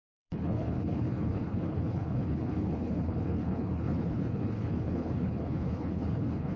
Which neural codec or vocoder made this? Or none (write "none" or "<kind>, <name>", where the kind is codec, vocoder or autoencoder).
codec, HILCodec